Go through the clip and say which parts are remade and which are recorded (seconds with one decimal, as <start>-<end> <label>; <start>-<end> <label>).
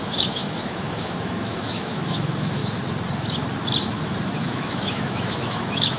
0.0-2.6 remade; 2.6-4.3 recorded; 4.3-6.0 remade